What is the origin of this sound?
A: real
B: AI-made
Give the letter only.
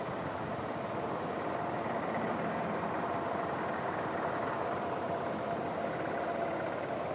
A